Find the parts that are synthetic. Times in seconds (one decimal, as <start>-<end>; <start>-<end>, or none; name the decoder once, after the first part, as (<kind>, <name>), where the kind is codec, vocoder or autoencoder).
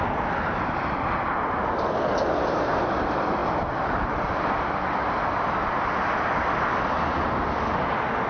none